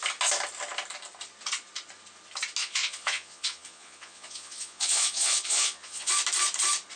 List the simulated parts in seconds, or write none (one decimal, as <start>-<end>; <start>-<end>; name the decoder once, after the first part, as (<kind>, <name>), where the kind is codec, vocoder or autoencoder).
2.6-6.1 (vocoder, Vocos)